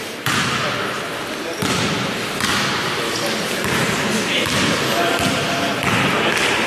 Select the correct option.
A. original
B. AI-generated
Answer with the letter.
A